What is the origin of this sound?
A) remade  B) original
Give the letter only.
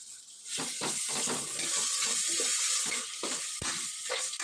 B